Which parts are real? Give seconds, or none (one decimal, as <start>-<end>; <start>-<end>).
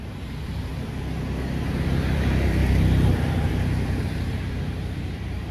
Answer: 0.7-1.6; 2.6-3.1